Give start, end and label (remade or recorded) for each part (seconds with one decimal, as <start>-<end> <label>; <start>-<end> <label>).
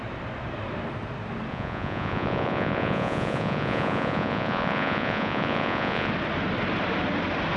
0.0-1.5 recorded; 1.5-6.1 remade; 6.1-7.6 recorded